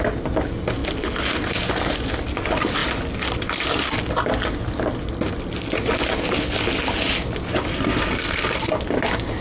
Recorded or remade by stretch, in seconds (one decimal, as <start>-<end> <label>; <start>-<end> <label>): 0.0-7.7 recorded; 7.7-8.6 remade; 8.6-9.4 recorded